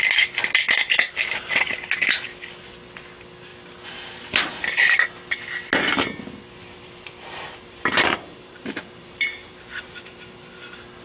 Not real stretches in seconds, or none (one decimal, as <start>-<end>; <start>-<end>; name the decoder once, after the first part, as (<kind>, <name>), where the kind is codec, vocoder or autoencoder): 6.6-10.6 (vocoder, BigVGAN v2)